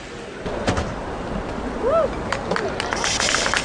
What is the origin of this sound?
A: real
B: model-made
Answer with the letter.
A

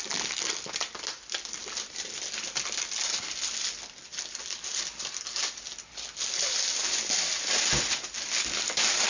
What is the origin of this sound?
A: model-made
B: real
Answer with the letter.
B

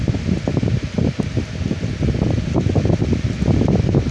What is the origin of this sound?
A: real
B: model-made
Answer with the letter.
A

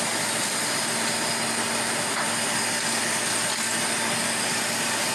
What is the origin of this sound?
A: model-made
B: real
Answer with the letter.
B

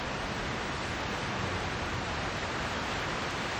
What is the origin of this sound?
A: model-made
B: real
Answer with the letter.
B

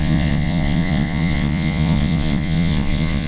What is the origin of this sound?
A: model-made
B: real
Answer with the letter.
A